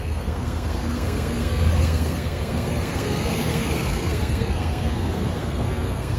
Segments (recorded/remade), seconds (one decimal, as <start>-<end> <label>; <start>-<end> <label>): 0.0-6.2 remade